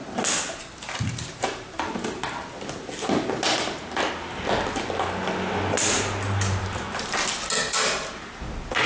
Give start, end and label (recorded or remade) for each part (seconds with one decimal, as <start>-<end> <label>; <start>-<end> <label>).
0.0-8.9 recorded